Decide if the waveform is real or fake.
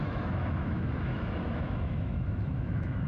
fake